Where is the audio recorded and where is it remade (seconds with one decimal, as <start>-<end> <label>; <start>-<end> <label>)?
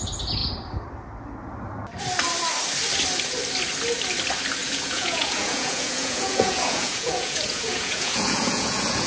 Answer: 0.0-4.6 recorded; 4.6-9.1 remade